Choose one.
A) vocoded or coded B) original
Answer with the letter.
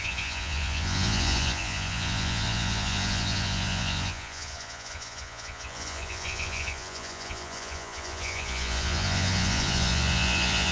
A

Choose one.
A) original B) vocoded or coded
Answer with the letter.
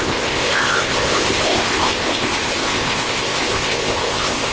B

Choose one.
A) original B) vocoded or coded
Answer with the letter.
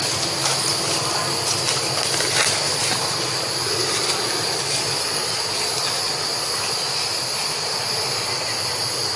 A